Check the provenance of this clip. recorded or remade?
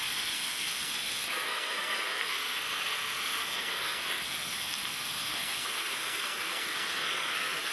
remade